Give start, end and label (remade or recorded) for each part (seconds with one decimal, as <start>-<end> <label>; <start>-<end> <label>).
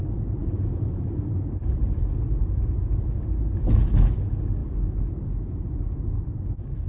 0.0-0.4 recorded; 0.4-1.3 remade; 1.3-6.9 recorded